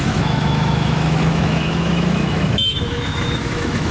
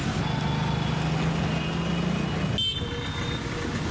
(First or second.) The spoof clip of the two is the first